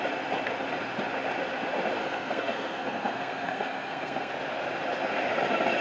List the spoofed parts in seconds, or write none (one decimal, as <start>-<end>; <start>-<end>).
2.0-4.3